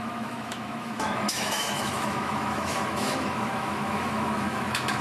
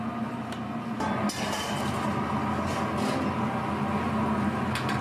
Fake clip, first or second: first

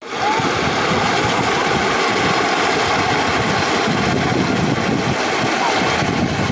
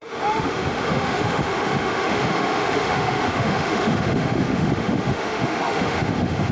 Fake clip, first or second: second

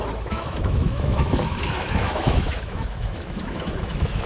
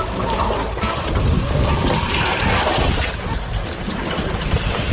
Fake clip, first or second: first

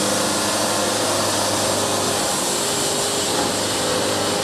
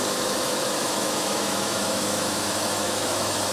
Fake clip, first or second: second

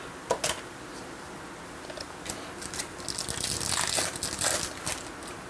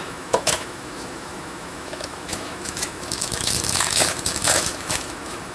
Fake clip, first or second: second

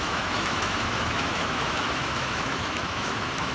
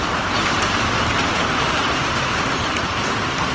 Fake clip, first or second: first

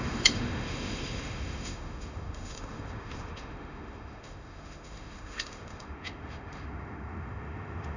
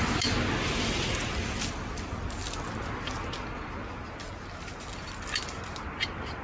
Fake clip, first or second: first